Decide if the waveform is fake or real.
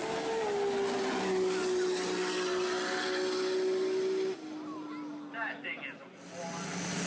real